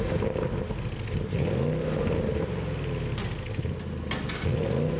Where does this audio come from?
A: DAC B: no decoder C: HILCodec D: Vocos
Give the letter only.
B